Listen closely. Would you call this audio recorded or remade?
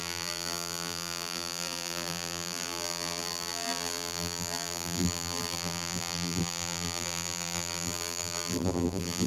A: remade